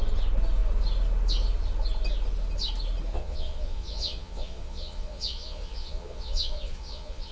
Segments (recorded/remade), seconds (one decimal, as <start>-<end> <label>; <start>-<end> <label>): 0.0-3.1 recorded; 3.1-7.3 remade